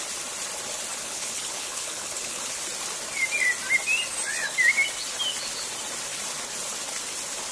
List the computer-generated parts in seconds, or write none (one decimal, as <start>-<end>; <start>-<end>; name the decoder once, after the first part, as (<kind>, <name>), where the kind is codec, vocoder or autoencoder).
0.9-2.6 (codec, HILCodec)